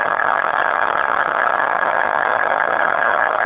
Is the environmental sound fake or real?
fake